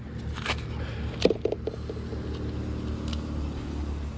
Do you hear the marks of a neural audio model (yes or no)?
no